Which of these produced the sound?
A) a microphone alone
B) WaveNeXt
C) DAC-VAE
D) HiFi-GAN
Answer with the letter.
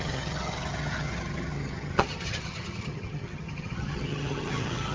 D